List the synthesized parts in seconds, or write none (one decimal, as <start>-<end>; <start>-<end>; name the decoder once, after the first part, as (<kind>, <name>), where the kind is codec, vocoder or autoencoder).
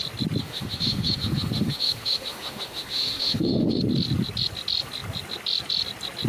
0.4-3.8 (autoencoder, DAC-VAE)